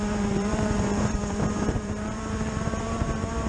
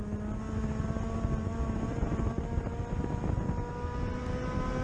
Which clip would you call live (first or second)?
second